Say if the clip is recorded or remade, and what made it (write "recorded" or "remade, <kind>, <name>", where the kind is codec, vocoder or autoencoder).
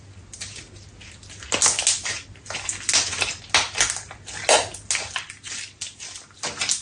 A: recorded